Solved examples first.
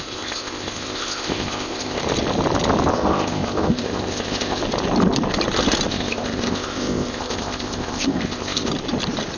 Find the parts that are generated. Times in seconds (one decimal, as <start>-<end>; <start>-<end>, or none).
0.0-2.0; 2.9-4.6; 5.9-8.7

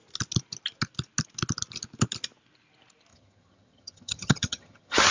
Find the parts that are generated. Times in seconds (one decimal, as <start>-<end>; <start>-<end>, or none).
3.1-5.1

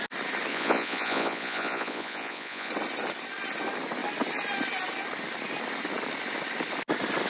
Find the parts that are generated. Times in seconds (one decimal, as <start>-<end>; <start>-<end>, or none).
0.5-2.7

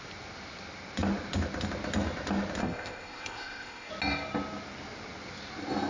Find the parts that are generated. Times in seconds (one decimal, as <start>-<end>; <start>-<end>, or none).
2.6-3.9

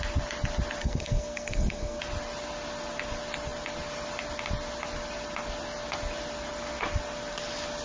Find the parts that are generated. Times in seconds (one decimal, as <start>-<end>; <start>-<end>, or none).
0.8-2.0

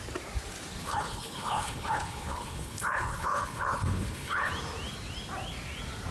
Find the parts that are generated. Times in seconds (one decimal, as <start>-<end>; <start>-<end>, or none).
0.8-4.5